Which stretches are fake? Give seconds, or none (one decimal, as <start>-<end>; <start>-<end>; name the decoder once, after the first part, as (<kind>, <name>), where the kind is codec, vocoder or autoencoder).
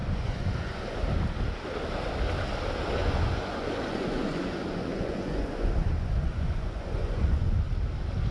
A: 0.0-1.0 (vocoder, Vocos); 3.0-7.6